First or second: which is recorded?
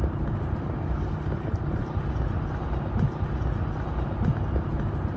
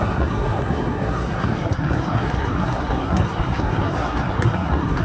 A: first